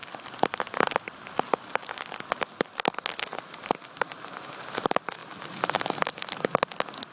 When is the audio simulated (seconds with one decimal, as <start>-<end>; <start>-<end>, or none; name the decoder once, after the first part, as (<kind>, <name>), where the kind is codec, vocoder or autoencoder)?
0.0-2.0 (vocoder, BigVGAN v2); 3.3-4.5; 5.2-5.8